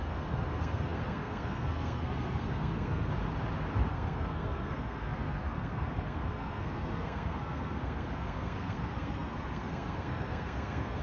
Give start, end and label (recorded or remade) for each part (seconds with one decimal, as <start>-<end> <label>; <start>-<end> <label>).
0.0-3.1 remade; 3.1-3.9 recorded; 3.9-11.0 remade